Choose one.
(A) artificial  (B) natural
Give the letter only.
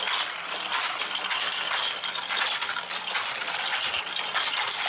B